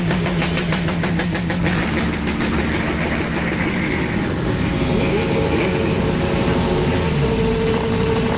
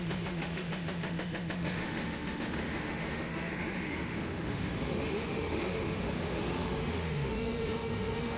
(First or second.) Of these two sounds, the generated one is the second